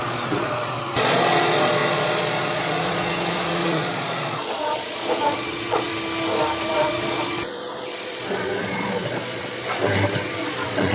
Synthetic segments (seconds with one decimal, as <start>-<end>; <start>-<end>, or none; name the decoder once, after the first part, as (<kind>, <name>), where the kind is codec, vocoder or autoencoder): 0.0-5.9 (vocoder, Vocos); 6.7-9.8; 10.4-10.9